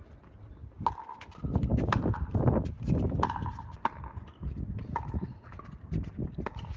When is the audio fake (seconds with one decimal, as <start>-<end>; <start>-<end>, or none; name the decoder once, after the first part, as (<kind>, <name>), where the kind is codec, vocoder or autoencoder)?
none

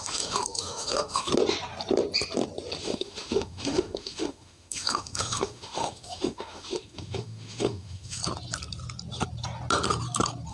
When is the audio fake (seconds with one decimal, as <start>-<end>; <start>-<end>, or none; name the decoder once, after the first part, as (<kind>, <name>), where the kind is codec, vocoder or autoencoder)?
0.0-1.3 (autoencoder, DAC-VAE); 2.8-8.2

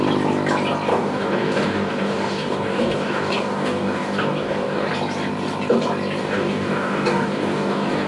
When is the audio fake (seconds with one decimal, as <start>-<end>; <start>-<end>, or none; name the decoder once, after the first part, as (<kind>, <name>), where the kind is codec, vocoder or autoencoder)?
0.9-4.9 (codec, DAC); 6.2-8.1